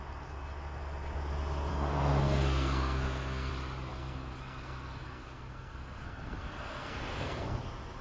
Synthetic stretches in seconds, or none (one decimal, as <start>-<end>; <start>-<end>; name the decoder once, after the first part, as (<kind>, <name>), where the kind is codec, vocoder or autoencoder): 1.7-3.5 (codec, SNAC); 3.9-7.6